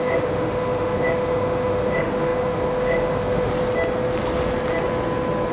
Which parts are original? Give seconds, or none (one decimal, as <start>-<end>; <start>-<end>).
3.5-5.5